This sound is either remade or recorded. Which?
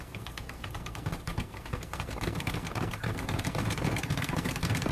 remade